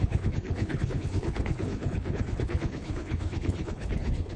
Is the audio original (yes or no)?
no